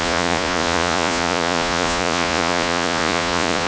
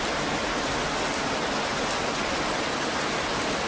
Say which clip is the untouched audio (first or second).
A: second